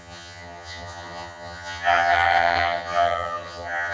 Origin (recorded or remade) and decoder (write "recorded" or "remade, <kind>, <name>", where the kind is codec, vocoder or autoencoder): remade, vocoder, HiFi-GAN